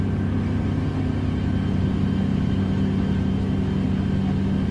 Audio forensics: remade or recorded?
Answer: recorded